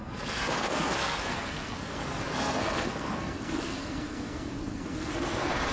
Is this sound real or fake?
fake